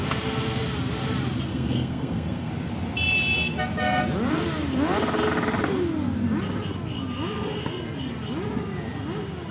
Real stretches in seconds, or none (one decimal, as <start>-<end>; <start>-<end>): 0.0-1.5; 2.5-9.5